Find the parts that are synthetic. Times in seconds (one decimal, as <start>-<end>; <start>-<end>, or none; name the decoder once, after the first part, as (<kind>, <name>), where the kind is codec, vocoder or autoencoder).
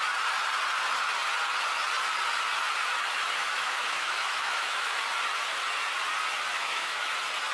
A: 3.4-5.0 (autoencoder, DAC-VAE); 6.5-7.1